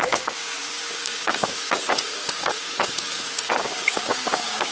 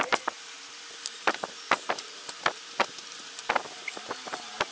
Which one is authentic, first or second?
second